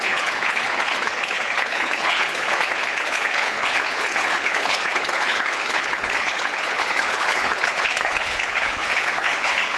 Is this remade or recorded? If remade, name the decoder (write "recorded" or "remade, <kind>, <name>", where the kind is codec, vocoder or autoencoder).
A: remade, codec, HILCodec